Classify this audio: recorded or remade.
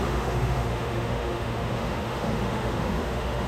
remade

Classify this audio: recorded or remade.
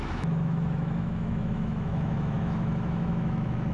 remade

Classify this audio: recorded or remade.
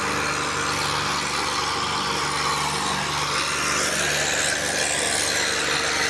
recorded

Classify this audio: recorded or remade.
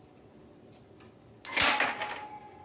recorded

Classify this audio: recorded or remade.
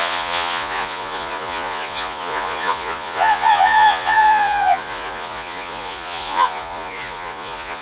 remade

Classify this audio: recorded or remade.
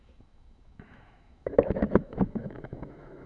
remade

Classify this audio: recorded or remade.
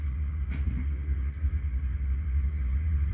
remade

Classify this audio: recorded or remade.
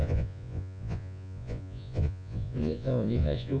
remade